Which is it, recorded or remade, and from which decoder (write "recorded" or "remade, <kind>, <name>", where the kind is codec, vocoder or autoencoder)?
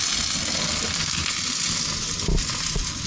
recorded